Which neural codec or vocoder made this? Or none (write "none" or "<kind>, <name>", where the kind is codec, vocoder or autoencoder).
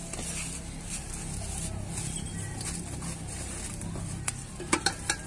none